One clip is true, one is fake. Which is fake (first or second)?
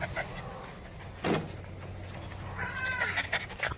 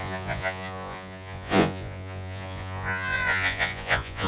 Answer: second